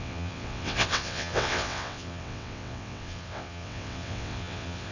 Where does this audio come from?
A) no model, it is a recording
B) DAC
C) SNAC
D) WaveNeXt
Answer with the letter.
D